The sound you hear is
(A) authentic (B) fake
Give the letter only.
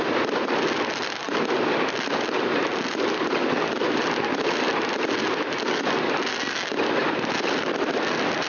A